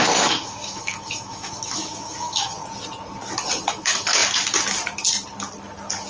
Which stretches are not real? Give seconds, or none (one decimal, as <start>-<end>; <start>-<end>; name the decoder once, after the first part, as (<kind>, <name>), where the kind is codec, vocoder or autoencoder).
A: 0.0-2.6 (autoencoder, DAC-VAE); 3.7-4.2